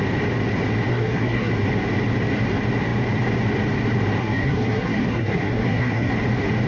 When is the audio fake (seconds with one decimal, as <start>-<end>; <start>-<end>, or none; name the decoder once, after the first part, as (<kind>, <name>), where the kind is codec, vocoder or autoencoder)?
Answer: 0.9-1.5 (codec, SNAC); 4.2-6.1